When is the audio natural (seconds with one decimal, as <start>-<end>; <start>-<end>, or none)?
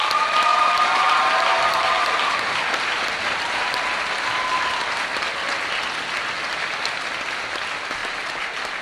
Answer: 0.0-0.5; 4.0-8.8